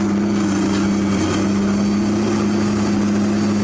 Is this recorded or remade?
recorded